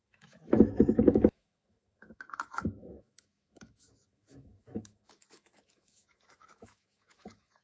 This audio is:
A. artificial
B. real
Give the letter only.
A